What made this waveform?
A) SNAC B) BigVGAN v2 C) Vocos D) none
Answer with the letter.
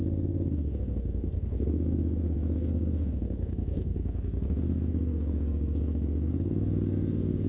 A